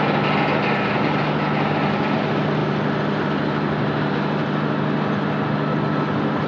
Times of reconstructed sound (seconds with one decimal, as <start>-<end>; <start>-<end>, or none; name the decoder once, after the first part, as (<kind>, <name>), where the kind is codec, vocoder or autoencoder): none